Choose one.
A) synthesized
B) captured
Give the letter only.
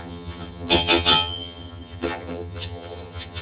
A